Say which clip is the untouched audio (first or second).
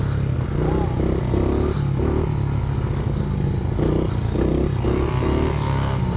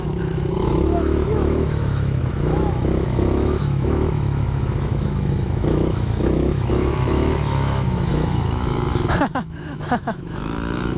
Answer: first